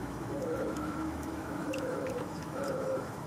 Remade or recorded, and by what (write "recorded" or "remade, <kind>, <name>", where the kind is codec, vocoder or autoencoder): remade, autoencoder, DAC-VAE